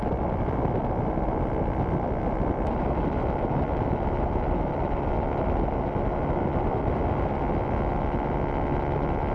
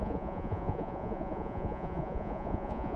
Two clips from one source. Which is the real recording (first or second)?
first